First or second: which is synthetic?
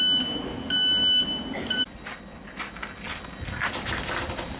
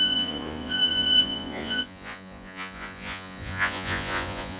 second